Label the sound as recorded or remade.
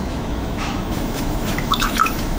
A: remade